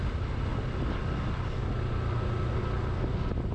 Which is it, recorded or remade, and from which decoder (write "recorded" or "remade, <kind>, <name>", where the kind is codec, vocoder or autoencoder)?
recorded